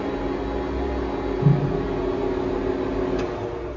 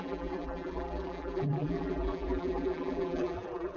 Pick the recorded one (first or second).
first